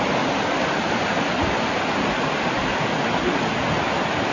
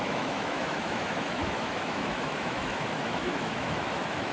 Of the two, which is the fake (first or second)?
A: second